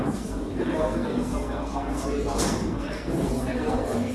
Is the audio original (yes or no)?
no